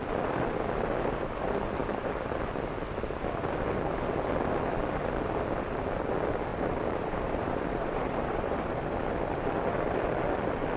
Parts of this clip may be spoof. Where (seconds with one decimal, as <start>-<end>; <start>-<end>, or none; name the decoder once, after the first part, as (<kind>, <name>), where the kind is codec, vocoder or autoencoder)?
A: 6.5-8.8 (vocoder, BigVGAN v2)